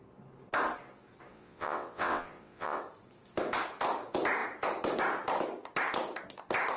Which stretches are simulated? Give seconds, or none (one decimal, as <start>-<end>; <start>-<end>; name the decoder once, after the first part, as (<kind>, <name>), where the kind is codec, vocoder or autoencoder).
1.3-2.8 (vocoder, WaveNeXt)